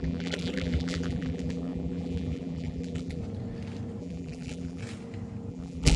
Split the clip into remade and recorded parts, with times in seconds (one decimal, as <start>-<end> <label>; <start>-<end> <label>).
0.0-3.2 remade; 3.2-4.0 recorded; 4.0-4.8 remade; 4.8-5.5 recorded; 5.5-6.0 remade